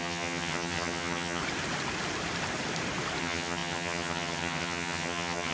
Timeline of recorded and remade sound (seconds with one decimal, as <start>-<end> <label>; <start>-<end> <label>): 0.0-1.4 remade; 1.4-3.2 recorded; 3.2-5.5 remade